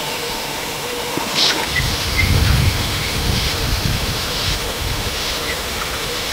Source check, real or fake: fake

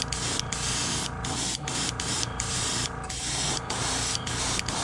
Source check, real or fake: real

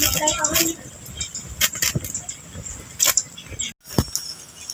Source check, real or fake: real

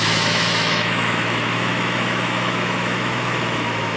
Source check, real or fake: fake